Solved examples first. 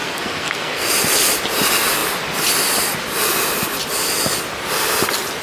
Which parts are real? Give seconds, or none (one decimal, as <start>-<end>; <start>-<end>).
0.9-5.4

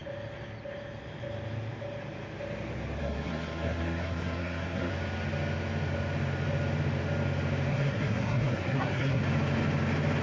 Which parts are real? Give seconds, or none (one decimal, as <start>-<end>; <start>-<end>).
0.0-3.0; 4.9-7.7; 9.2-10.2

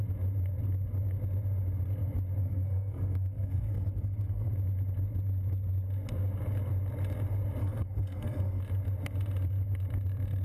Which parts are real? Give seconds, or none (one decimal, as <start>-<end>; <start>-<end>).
0.0-2.4; 4.5-7.6; 8.6-10.4

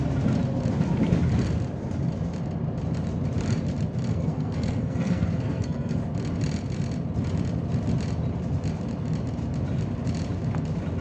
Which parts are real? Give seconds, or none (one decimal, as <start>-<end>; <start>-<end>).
0.0-4.1; 6.0-11.0

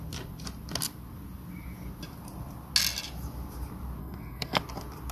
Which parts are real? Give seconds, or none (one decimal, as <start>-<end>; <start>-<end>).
0.0-4.0; 4.6-5.1

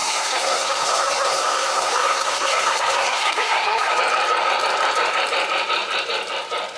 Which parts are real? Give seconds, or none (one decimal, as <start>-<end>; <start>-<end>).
4.0-6.8